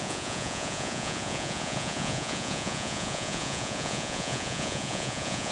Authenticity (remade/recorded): remade